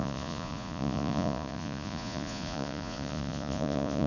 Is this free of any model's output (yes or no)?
no